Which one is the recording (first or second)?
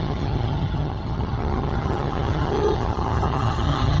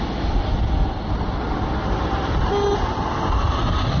second